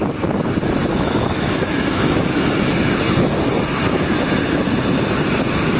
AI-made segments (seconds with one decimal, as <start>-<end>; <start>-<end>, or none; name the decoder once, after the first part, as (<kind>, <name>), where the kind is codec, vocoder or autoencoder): 0.9-2.7 (autoencoder, DAC-VAE)